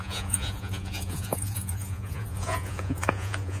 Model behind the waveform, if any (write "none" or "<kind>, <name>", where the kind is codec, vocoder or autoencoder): vocoder, Vocos